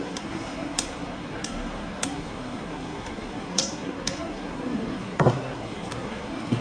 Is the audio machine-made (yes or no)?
yes